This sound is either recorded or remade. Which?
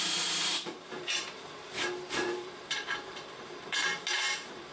remade